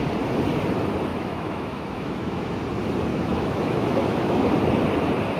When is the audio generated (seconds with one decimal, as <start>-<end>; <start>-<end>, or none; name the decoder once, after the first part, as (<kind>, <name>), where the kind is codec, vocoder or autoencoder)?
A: 1.1-2.6 (autoencoder, DAC-VAE); 3.1-4.4